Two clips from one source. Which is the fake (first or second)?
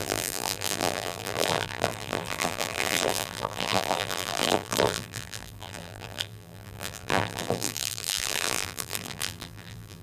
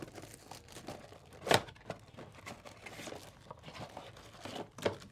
first